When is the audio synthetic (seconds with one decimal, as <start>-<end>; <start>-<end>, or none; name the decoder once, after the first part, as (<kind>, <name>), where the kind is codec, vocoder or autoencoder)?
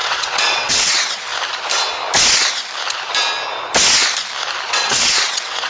0.0-1.3 (vocoder, WaveNeXt); 4.7-5.7